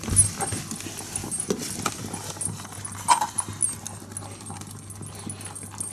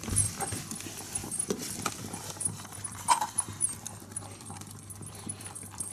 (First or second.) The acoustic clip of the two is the first